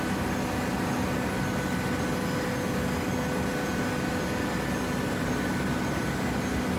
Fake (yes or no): no